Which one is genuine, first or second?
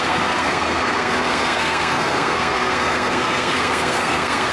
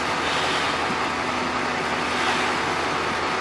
second